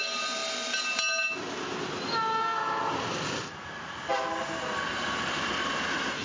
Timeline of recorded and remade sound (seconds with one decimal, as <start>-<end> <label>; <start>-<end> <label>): 0.0-6.2 recorded